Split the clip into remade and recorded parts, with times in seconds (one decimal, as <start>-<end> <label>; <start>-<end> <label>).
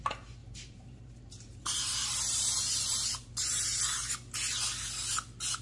0.0-0.4 recorded; 0.4-3.8 remade; 3.8-5.6 recorded